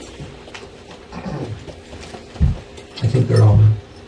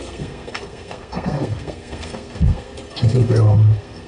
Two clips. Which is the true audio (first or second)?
first